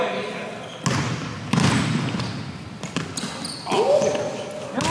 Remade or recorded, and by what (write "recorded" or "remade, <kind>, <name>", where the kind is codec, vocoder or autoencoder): recorded